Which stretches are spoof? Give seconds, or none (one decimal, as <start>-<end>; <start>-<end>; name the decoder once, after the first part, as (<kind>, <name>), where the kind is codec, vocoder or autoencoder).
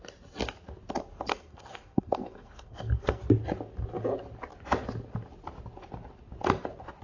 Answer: 1.3-3.2 (codec, SNAC)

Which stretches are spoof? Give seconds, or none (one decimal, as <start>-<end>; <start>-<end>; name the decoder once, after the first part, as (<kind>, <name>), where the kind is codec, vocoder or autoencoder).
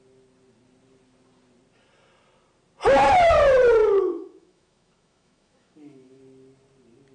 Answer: 3.8-6.2 (autoencoder, DAC-VAE)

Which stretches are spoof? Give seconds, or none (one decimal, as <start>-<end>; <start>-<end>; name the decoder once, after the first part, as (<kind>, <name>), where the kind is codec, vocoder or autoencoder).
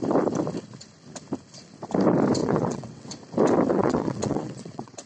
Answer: 2.4-3.2 (vocoder, WaveNeXt); 3.7-5.1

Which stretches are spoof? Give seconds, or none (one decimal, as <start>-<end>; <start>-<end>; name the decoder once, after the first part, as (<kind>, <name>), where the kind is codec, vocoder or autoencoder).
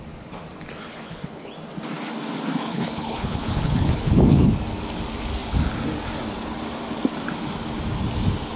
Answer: 0.9-1.5 (codec, HILCodec); 2.6-4.5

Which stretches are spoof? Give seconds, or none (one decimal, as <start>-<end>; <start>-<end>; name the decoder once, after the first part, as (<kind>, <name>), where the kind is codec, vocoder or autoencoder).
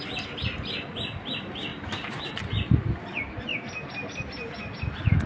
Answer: none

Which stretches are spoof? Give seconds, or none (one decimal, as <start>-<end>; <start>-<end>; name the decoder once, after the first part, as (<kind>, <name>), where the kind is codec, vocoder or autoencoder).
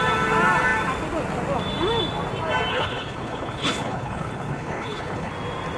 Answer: 2.7-5.3 (codec, HILCodec)